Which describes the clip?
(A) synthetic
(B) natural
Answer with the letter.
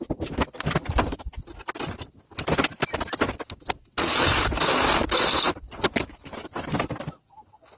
B